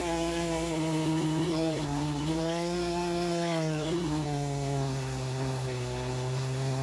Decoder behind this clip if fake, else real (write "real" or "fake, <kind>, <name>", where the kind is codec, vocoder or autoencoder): fake, codec, SNAC